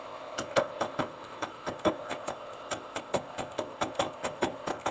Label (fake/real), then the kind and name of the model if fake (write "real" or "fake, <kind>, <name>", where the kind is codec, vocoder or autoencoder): fake, codec, ZipCodec